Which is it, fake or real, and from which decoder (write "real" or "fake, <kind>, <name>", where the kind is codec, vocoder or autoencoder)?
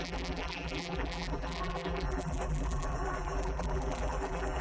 fake, vocoder, BigVGAN v2